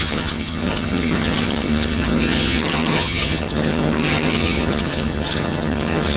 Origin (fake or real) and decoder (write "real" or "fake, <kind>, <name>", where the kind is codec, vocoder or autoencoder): fake, vocoder, HiFi-GAN